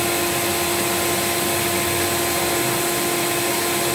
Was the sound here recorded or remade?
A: recorded